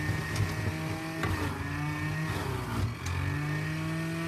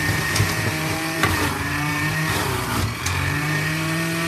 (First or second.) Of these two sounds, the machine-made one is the second